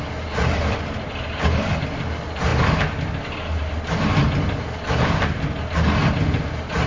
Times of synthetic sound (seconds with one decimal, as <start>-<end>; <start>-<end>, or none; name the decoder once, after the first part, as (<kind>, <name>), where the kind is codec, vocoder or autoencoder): none